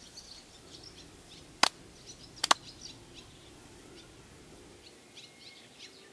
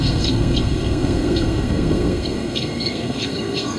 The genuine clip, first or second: first